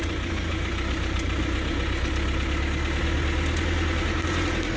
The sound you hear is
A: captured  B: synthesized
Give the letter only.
A